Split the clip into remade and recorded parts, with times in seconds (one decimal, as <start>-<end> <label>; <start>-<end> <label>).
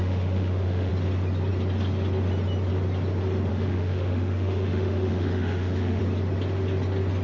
0.0-0.9 remade; 0.9-3.5 recorded; 3.5-6.0 remade; 6.0-7.2 recorded